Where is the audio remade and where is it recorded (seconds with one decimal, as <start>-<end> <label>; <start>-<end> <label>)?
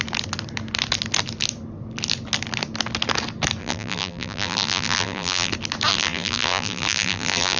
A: 0.0-3.6 recorded; 3.6-5.5 remade; 5.5-5.9 recorded; 5.9-7.6 remade